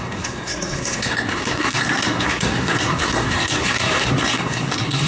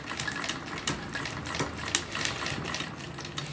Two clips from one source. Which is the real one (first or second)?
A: second